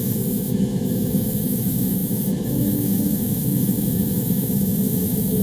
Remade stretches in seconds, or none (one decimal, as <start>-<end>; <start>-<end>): 0.0-5.4